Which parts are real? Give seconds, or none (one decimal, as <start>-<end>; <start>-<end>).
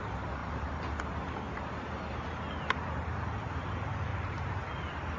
0.0-0.4; 1.5-4.1; 4.7-5.2